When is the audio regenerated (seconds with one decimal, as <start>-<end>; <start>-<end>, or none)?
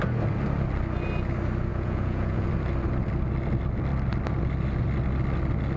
1.7-2.5